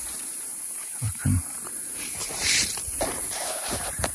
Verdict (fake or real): fake